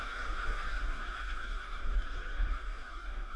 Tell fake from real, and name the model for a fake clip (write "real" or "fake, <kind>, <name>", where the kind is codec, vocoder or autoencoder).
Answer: fake, codec, DAC